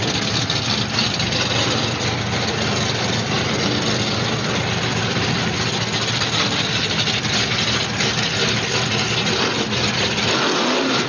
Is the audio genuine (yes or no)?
yes